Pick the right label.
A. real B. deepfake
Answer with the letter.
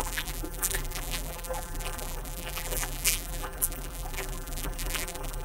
B